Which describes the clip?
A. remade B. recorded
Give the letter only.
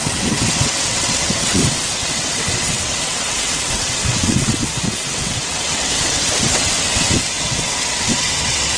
A